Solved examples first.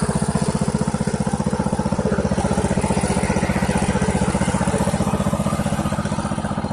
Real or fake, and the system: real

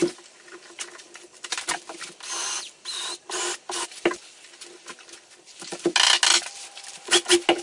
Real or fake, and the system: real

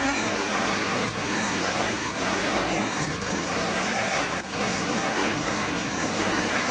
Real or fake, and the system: fake, codec, SNAC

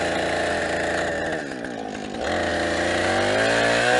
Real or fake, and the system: real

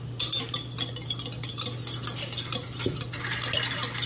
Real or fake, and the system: real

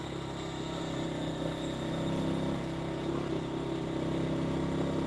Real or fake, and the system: real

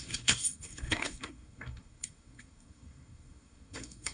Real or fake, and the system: fake, codec, SNAC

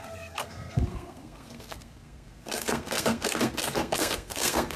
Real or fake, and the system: fake, codec, SNAC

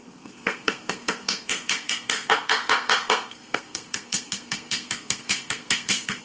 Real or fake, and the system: fake, codec, SNAC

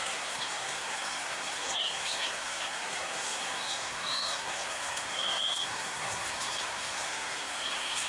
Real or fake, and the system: fake, codec, SNAC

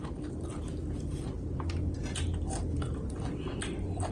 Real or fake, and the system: real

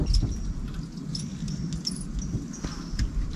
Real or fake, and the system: real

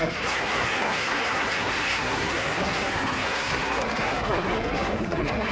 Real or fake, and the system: fake, codec, SNAC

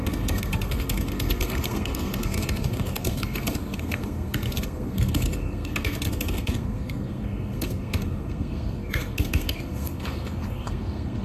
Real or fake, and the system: fake, codec, SNAC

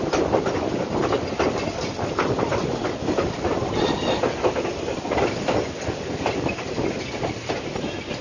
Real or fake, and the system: real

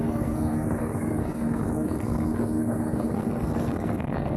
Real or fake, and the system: fake, codec, SNAC